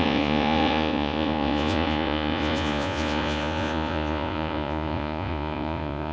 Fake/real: fake